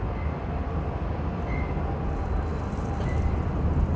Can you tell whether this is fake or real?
real